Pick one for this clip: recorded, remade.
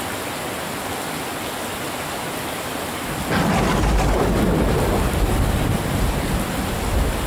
recorded